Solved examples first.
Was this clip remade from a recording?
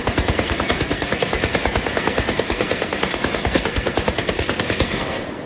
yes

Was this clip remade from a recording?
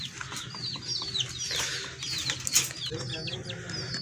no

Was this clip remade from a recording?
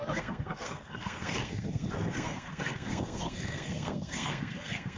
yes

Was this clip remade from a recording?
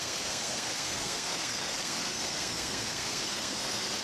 yes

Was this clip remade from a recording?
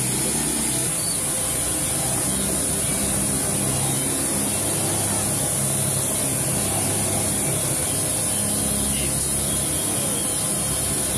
no